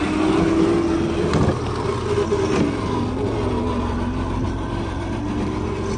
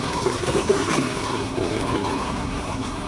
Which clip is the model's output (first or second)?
second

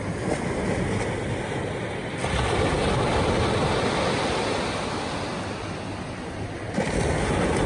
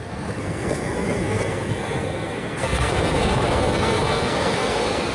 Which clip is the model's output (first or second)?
second